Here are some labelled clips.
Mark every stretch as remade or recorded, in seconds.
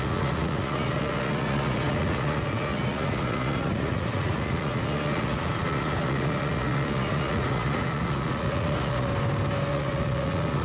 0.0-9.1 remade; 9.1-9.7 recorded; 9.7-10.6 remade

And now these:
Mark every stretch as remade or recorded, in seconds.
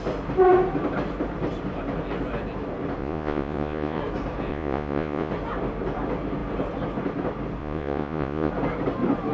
0.0-3.0 recorded; 3.0-4.0 remade; 4.0-4.5 recorded; 4.5-5.3 remade; 5.3-7.6 recorded; 7.6-8.5 remade; 8.5-9.3 recorded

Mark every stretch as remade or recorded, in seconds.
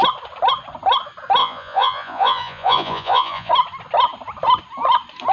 0.0-1.4 recorded; 1.4-3.5 remade; 3.5-5.3 recorded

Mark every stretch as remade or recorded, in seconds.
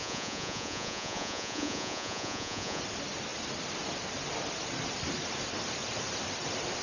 0.0-2.8 remade; 2.8-6.8 recorded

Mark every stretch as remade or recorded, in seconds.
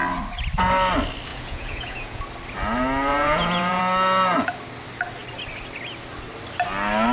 0.0-1.3 recorded; 1.3-2.2 remade; 2.2-3.1 recorded; 3.1-3.8 remade; 3.8-7.1 recorded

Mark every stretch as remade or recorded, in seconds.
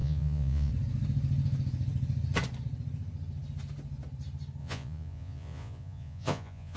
0.0-0.7 remade; 0.7-4.6 recorded; 4.6-6.8 remade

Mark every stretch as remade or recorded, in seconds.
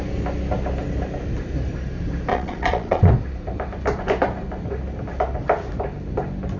0.0-2.3 recorded; 2.3-3.1 remade; 3.1-6.6 recorded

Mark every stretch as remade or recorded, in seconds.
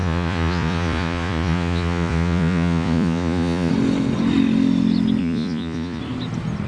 0.0-3.7 remade; 3.7-5.2 recorded; 5.2-6.0 remade; 6.0-6.7 recorded